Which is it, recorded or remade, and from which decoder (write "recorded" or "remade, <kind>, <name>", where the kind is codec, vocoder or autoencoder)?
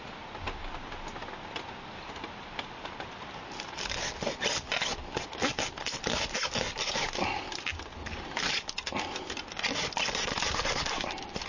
recorded